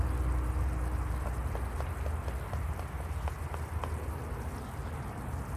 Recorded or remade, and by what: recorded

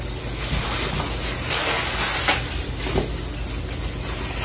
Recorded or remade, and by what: recorded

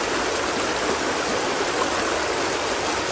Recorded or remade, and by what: recorded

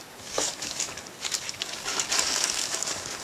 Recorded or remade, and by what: remade, codec, DAC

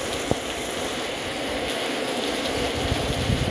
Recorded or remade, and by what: recorded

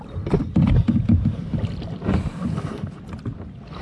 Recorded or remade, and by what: recorded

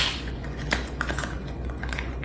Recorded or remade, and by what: remade, vocoder, Vocos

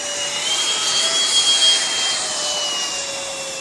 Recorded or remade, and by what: recorded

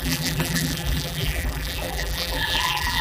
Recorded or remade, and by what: remade, vocoder, BigVGAN v2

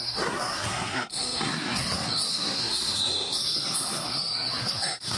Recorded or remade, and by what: remade, codec, SNAC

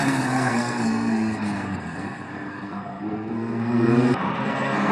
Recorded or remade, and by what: remade, codec, SNAC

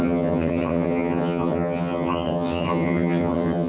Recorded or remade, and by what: remade, vocoder, HiFi-GAN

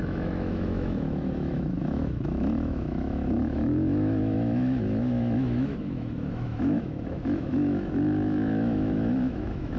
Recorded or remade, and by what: remade, autoencoder, DAC-VAE